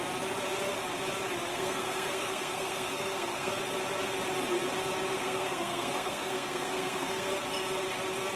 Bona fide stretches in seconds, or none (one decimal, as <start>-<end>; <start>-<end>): 0.0-1.5; 3.5-5.1; 7.3-8.4